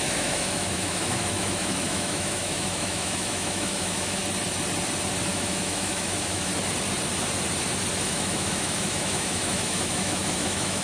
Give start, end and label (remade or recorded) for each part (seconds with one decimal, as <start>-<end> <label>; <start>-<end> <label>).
0.0-4.2 remade; 4.2-5.3 recorded; 5.3-6.5 remade; 6.5-8.0 recorded; 8.0-10.8 remade